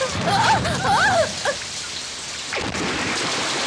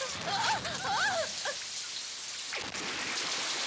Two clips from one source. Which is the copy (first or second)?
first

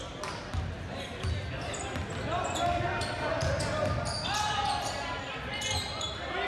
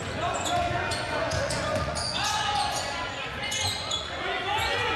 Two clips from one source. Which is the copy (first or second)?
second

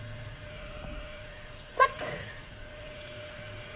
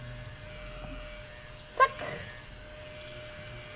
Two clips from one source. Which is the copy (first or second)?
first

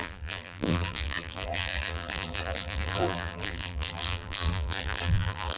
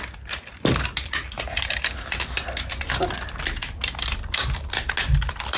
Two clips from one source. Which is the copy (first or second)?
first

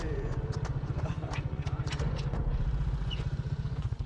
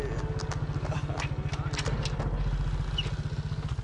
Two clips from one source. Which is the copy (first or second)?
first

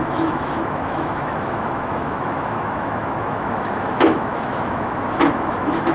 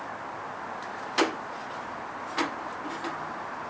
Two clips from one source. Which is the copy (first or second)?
first